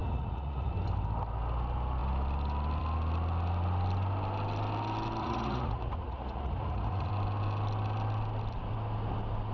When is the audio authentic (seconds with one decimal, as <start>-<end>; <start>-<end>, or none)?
0.7-5.2; 7.1-9.5

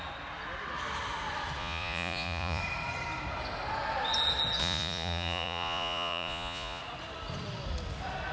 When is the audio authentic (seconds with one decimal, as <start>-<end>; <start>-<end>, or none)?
0.0-1.6; 2.6-4.6; 6.8-8.3

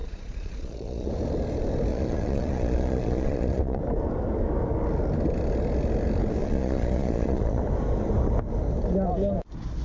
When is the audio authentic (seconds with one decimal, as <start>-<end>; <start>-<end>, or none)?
1.1-1.9; 3.8-6.4; 7.6-9.8

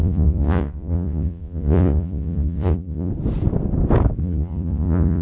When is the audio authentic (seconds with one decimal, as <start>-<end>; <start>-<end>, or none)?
3.1-4.2

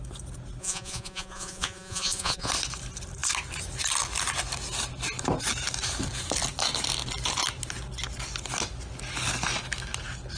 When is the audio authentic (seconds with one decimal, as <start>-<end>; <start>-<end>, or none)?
0.0-0.6; 2.5-10.4

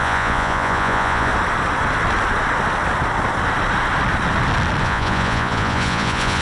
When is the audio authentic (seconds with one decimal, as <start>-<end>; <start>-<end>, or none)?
1.3-4.8

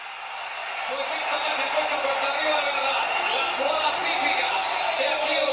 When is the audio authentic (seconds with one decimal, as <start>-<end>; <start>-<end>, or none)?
0.0-5.5